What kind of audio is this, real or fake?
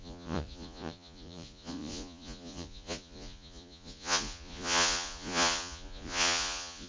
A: fake